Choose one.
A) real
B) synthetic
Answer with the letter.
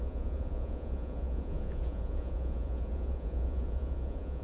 B